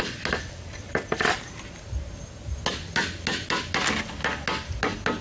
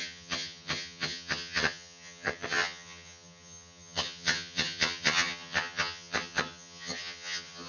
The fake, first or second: second